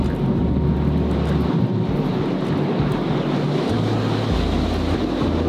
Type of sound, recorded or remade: recorded